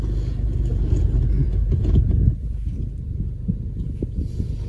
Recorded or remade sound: recorded